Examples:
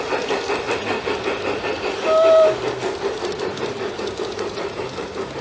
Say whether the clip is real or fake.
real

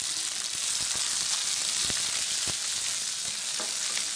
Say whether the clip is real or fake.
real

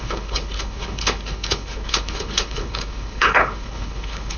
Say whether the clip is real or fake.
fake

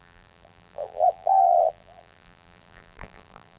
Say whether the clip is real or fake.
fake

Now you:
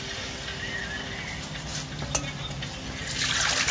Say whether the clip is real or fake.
real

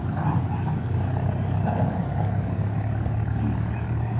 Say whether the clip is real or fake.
fake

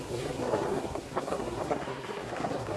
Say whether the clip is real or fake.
fake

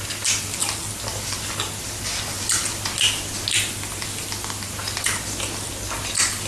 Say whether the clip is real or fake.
real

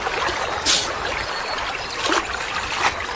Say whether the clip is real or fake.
real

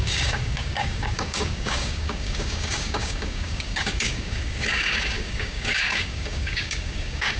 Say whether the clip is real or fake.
fake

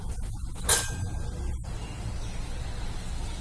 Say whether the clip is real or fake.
real